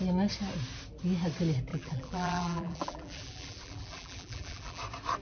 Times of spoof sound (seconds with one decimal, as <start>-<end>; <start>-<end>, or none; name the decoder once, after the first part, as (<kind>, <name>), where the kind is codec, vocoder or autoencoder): 1.7-4.8 (vocoder, BigVGAN v2)